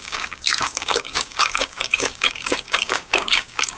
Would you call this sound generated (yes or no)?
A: yes